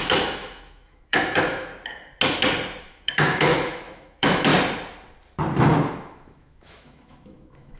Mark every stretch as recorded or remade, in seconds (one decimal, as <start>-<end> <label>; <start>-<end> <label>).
0.0-1.7 remade; 1.7-2.8 recorded; 2.8-4.5 remade; 4.5-5.6 recorded; 5.6-7.8 remade